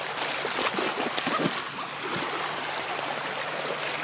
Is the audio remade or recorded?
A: recorded